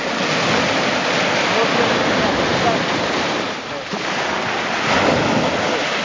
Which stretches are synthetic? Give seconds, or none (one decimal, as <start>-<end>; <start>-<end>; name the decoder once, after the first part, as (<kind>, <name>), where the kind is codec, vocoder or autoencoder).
1.6-5.2 (vocoder, BigVGAN v2)